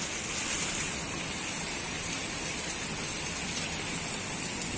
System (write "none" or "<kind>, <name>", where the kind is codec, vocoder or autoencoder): none